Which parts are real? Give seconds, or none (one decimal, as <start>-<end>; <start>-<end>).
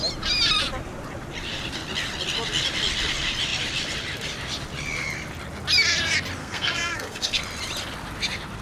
0.0-6.4; 7.4-8.6